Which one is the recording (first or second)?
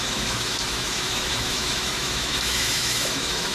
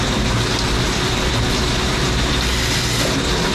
second